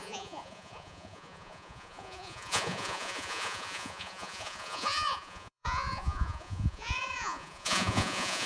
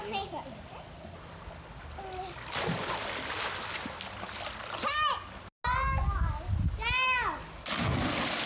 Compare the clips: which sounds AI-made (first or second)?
first